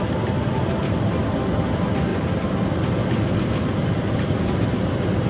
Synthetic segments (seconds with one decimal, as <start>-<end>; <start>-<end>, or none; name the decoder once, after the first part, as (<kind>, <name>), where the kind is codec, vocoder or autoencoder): none